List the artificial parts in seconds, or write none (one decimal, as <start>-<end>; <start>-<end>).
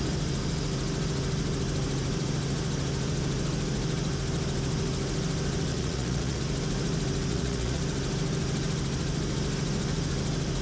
5.7-6.4; 7.3-7.8